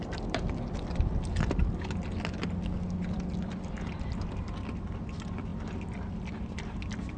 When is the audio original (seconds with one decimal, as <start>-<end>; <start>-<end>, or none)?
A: 0.0-7.2